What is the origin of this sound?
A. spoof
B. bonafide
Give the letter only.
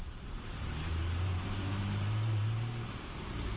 A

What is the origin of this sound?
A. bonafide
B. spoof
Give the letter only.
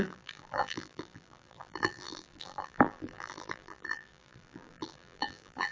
B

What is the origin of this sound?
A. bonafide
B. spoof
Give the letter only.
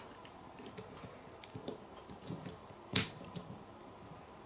B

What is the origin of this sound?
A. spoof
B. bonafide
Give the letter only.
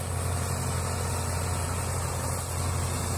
B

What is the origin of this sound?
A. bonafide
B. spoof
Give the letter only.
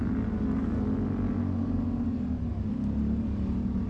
A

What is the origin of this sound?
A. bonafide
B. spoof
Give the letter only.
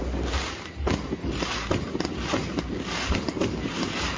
B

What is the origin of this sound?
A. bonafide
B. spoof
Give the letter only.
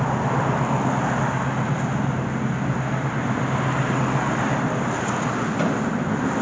A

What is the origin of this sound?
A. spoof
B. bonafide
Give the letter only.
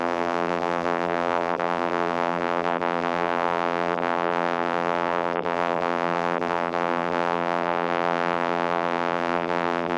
A